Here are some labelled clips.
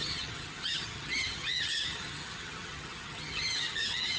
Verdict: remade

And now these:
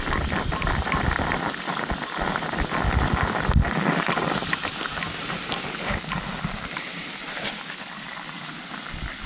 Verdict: recorded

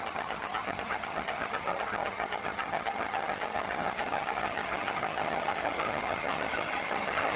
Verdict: remade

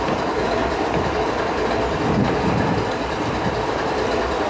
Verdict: recorded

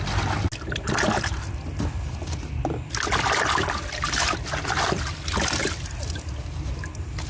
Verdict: recorded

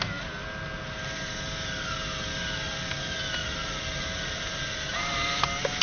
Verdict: recorded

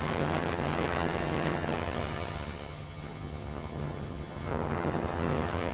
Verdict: remade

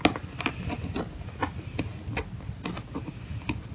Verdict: recorded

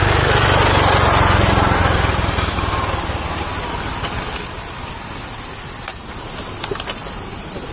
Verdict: recorded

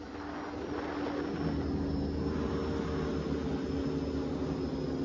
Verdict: recorded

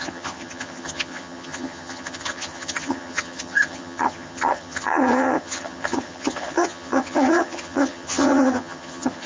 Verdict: remade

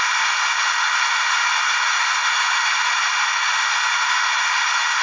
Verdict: recorded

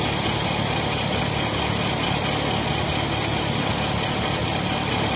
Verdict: recorded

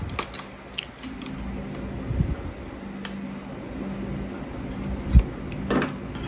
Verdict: recorded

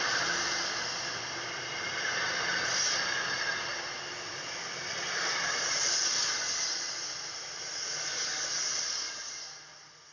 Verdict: recorded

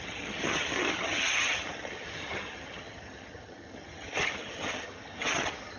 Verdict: remade